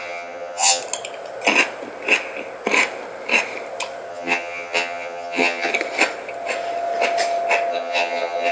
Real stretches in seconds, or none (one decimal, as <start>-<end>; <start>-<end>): 0.8-4.1; 5.7-7.7